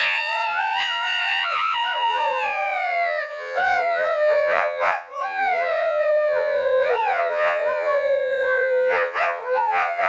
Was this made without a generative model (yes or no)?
no